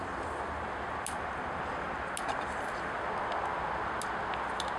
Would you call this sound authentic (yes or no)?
yes